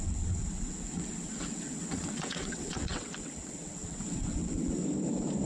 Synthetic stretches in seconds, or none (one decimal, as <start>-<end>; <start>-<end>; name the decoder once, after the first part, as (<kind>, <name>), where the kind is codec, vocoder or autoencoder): 0.0-4.8 (vocoder, WaveNeXt)